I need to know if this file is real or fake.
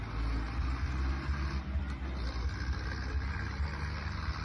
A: real